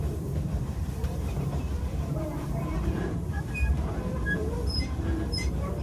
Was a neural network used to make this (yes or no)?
yes